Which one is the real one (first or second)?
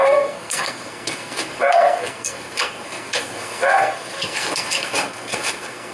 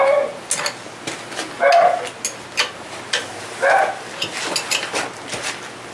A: second